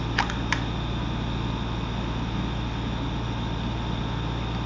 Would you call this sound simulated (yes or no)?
no